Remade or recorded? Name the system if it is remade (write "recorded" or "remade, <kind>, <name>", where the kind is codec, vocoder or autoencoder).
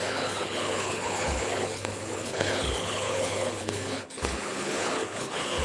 remade, codec, HILCodec